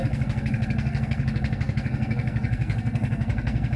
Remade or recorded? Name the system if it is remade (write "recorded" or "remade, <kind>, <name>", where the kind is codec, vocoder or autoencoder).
remade, codec, SNAC